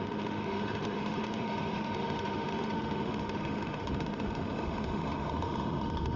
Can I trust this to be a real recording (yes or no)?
no